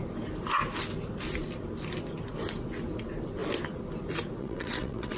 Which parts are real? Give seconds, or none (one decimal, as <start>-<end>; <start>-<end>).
0.0-4.4